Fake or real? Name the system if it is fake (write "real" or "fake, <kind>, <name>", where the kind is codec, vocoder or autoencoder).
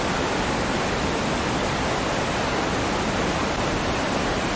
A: real